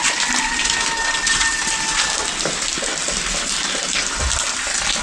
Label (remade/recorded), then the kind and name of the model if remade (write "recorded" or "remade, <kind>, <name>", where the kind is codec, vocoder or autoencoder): recorded